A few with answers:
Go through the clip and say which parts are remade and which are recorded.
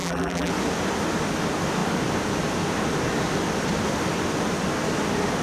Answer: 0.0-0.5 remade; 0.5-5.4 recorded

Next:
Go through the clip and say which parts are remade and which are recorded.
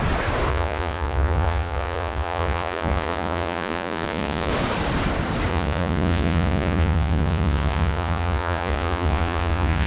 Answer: 0.0-0.5 recorded; 0.5-4.5 remade; 4.5-5.5 recorded; 5.5-9.9 remade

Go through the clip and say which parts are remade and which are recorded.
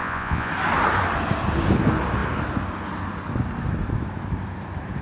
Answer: 0.0-0.5 remade; 0.5-5.0 recorded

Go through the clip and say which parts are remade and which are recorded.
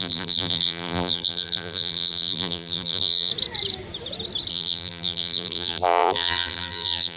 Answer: 0.0-3.3 remade; 3.3-4.5 recorded; 4.5-7.2 remade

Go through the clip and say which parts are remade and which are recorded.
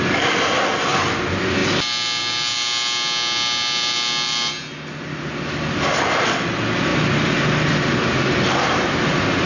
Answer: 0.0-6.9 recorded; 6.9-9.5 remade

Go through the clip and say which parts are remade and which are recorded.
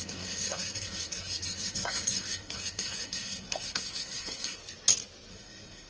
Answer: 0.0-4.6 remade; 4.6-5.3 recorded; 5.3-5.9 remade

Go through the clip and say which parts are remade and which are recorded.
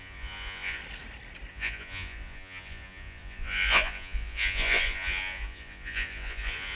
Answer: 0.0-0.8 remade; 0.8-1.5 recorded; 1.5-6.7 remade